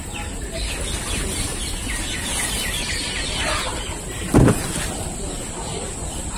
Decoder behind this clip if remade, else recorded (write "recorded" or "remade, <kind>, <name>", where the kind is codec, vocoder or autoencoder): recorded